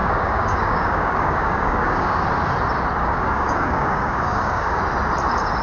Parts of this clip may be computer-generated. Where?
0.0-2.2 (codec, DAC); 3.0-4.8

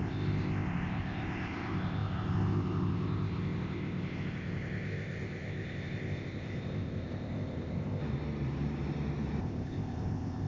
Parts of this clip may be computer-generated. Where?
0.0-8.0 (codec, ZipCodec); 9.4-10.5

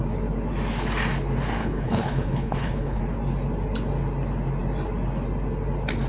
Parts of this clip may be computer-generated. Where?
1.6-3.0 (codec, HILCodec)